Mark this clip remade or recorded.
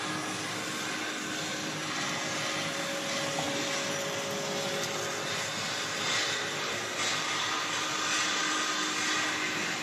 recorded